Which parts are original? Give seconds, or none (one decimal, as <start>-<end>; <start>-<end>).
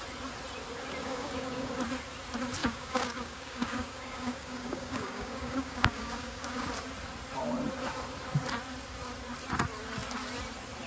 0.0-1.0; 1.7-2.6; 6.7-10.9